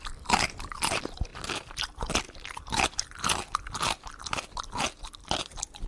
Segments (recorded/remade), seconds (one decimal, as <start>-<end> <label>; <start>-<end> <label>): 0.0-5.9 recorded